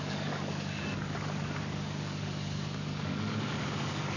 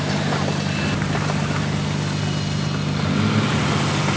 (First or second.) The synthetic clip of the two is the first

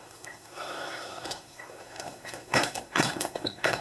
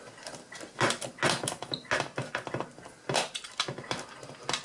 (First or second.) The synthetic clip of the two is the first